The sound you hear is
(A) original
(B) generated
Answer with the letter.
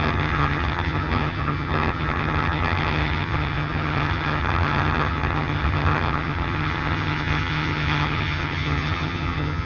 B